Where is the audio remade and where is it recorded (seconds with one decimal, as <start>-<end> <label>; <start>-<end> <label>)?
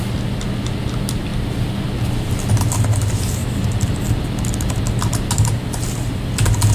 0.0-1.3 recorded; 1.3-2.5 remade; 2.5-3.4 recorded; 3.4-4.1 remade; 4.1-6.7 recorded